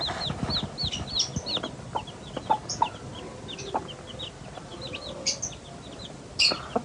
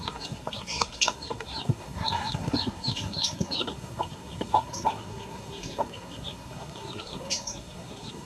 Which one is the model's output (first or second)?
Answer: second